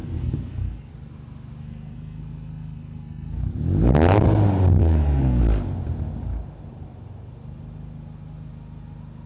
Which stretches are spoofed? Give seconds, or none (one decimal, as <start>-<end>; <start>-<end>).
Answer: 0.0-0.9; 1.6-3.4; 4.8-5.4